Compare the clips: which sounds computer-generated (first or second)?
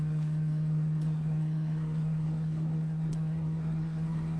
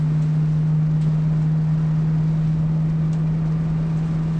first